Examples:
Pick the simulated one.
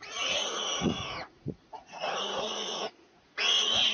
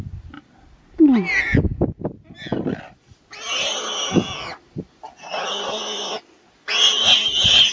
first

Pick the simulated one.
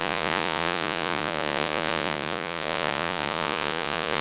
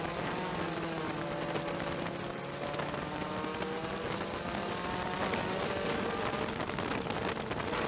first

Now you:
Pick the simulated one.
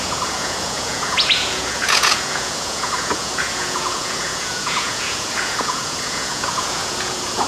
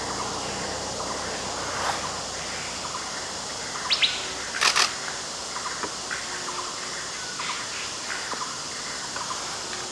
first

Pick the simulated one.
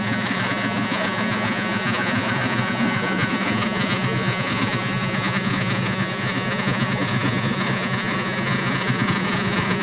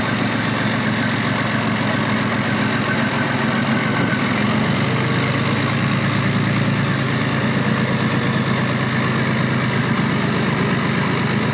first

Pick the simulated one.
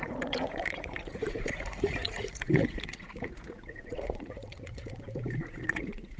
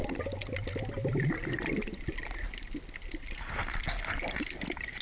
first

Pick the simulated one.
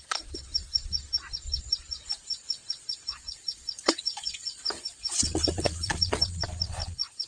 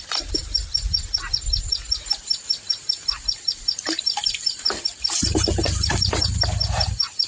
first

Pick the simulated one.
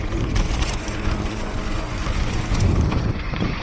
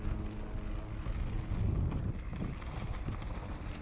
first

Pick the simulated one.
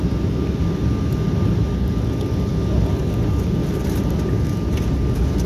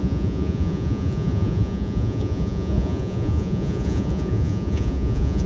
second